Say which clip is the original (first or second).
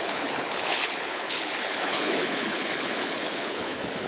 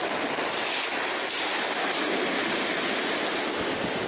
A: second